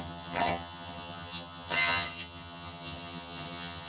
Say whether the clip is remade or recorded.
remade